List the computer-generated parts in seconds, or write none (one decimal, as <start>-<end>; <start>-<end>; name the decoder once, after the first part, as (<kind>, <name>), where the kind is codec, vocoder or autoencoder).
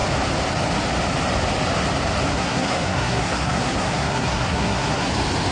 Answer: 2.3-5.1 (codec, SNAC)